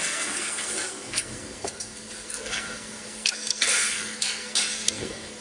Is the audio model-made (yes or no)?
yes